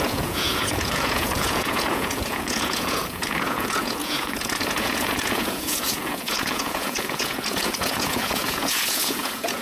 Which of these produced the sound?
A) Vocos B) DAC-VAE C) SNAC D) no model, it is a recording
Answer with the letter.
A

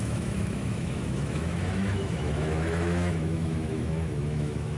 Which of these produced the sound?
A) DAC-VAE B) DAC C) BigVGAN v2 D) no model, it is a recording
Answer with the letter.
A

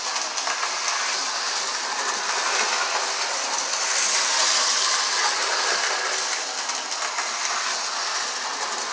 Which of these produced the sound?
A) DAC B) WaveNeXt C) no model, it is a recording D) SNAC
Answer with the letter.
C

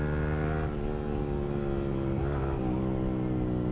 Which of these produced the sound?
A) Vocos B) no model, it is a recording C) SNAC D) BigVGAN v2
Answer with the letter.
B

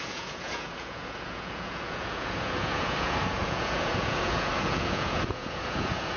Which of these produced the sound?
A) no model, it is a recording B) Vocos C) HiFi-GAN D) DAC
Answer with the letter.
B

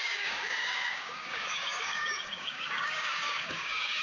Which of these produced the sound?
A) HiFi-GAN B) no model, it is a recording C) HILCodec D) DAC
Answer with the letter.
D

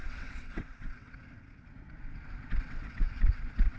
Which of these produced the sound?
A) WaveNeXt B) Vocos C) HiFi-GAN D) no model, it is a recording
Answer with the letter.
A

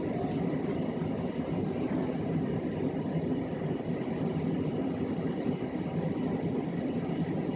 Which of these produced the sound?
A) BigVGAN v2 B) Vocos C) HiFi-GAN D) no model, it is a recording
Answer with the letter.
D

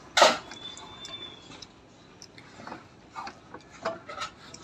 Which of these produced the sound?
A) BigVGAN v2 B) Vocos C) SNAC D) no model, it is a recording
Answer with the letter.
D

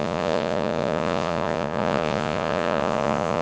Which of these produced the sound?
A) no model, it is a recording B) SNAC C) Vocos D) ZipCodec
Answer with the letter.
C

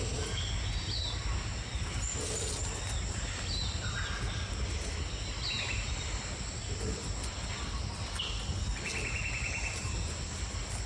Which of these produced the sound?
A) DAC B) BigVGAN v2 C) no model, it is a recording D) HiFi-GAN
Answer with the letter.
C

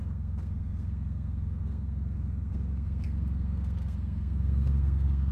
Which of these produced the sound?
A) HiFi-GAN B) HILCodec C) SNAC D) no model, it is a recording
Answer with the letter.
C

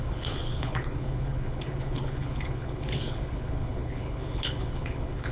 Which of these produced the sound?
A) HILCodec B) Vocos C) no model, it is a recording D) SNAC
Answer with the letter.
A